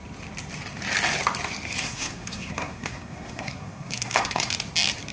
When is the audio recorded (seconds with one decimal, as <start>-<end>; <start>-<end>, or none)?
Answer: 0.0-1.8; 4.5-5.1